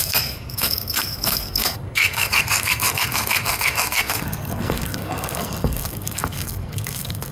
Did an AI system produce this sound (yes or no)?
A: yes